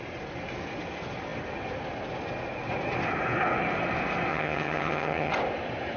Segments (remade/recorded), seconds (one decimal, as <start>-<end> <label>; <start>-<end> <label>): 0.0-4.3 recorded; 4.3-5.3 remade; 5.3-6.0 recorded